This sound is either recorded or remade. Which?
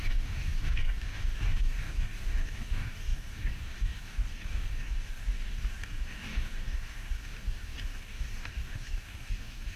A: remade